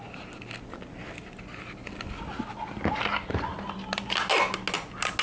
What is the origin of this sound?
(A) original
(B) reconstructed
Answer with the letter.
A